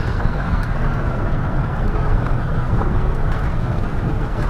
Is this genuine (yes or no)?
no